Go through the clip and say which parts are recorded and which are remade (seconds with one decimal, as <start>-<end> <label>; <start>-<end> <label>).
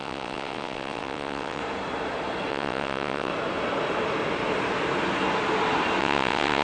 0.0-1.6 remade; 1.6-2.5 recorded; 2.5-3.3 remade; 3.3-6.0 recorded; 6.0-6.6 remade